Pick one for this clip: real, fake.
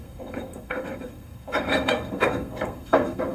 fake